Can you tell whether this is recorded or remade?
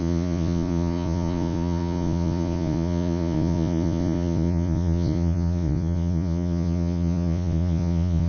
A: remade